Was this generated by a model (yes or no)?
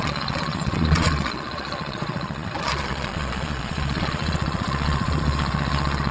yes